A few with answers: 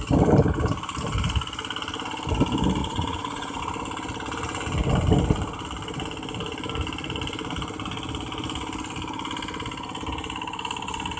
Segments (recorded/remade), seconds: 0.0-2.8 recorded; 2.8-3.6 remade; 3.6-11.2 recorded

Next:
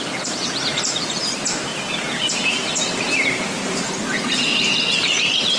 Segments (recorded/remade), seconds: 0.0-5.6 remade

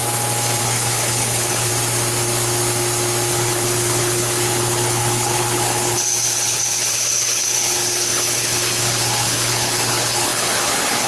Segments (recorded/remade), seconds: 0.0-0.6 recorded; 0.6-1.7 remade; 1.7-3.3 recorded; 3.3-11.1 remade

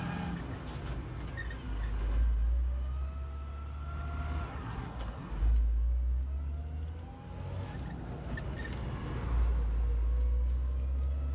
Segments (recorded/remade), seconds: 0.0-4.5 recorded; 4.5-5.3 remade; 5.3-11.3 recorded

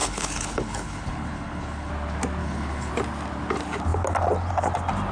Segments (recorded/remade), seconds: 0.0-1.9 remade; 1.9-2.4 recorded; 2.4-2.9 remade; 2.9-5.1 recorded

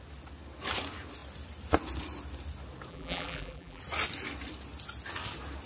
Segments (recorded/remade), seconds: 0.0-2.9 recorded; 2.9-3.8 remade; 3.8-5.7 recorded

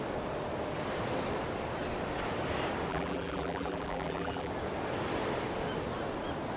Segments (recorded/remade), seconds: 0.0-2.9 recorded; 2.9-4.5 remade; 4.5-6.6 recorded

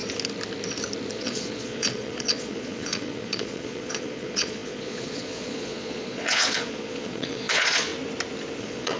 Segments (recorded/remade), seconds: 0.0-1.1 recorded; 1.1-7.9 remade; 7.9-8.6 recorded; 8.6-9.0 remade